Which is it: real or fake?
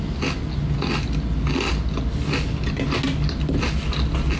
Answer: real